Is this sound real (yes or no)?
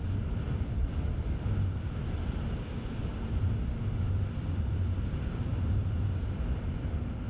yes